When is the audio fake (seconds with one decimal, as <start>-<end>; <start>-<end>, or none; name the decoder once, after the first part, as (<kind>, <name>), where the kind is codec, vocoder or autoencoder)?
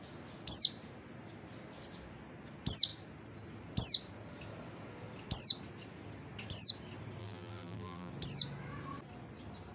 7.2-8.1 (vocoder, BigVGAN v2)